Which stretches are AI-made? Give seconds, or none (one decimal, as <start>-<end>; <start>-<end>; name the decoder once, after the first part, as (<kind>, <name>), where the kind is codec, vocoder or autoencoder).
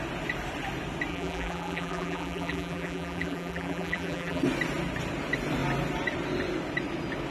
1.1-4.4 (vocoder, BigVGAN v2)